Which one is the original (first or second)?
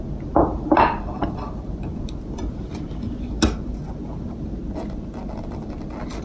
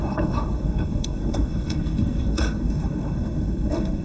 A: first